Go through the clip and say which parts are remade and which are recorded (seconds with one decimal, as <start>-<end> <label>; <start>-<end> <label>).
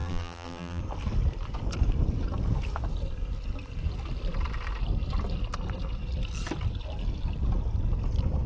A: 0.0-0.8 remade; 0.8-8.5 recorded